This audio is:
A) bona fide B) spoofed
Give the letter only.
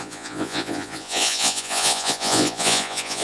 B